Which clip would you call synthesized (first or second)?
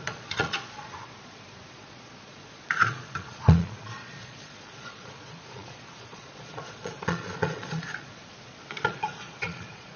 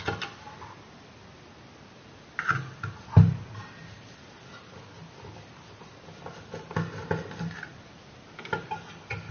first